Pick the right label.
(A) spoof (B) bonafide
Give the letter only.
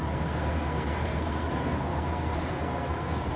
A